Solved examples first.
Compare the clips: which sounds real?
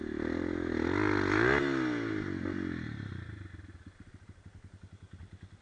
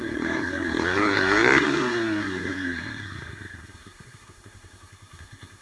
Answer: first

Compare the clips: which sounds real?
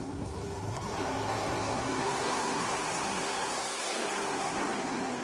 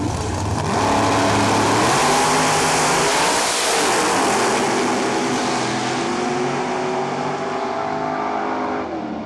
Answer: second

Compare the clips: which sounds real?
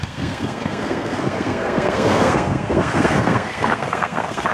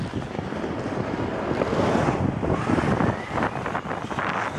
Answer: second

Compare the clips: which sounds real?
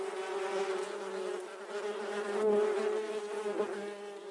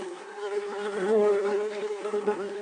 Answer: first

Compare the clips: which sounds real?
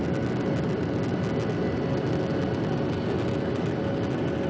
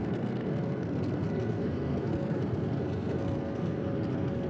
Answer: first